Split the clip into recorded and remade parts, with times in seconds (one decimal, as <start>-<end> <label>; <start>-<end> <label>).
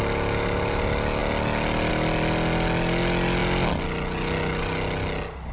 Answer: 0.0-5.5 recorded